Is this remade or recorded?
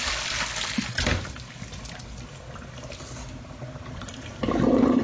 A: recorded